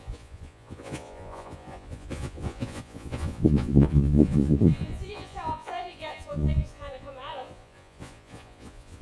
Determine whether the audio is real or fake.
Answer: fake